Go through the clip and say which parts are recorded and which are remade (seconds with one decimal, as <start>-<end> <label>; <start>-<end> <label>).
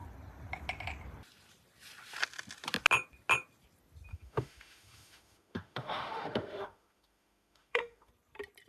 0.0-4.1 recorded; 4.1-8.1 remade; 8.1-8.7 recorded